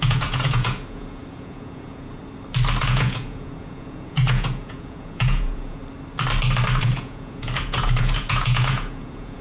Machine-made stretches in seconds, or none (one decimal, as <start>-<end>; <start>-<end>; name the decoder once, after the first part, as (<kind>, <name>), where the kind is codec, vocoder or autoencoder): 0.0-2.2 (vocoder, Vocos); 2.8-5.8; 6.8-9.4